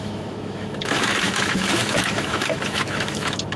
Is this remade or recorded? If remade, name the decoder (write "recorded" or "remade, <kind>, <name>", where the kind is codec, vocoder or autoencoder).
remade, autoencoder, DAC-VAE